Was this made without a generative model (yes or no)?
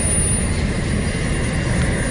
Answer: yes